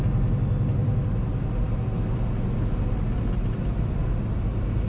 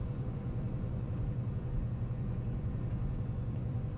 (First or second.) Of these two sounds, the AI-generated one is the second